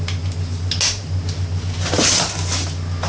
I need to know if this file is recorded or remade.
recorded